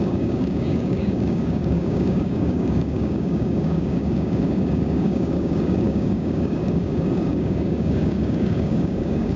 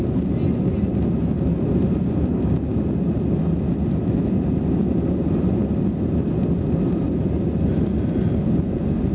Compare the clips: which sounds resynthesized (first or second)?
first